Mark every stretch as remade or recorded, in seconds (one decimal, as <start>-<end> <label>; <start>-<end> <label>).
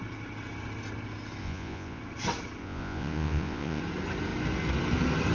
0.0-1.4 recorded; 1.4-2.0 remade; 2.0-2.6 recorded; 2.6-3.8 remade; 3.8-5.3 recorded